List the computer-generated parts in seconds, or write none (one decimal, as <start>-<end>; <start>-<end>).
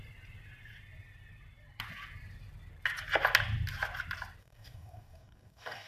4.4-5.9